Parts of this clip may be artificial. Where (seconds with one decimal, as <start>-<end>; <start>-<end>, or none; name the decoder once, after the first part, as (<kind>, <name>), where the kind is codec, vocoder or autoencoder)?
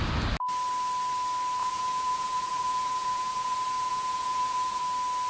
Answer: 1.6-4.8 (vocoder, Vocos)